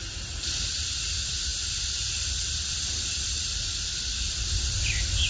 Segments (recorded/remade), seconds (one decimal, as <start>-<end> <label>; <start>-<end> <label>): 0.0-5.3 recorded